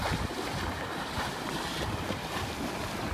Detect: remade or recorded remade